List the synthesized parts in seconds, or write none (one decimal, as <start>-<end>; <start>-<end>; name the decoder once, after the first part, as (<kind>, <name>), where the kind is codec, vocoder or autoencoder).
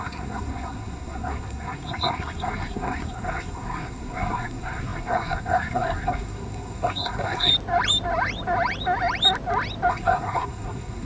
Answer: 0.0-7.5 (codec, SNAC); 9.9-11.0